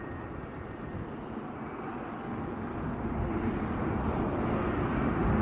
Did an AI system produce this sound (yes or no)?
no